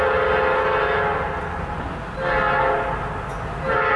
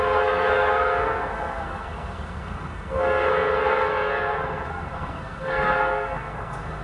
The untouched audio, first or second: first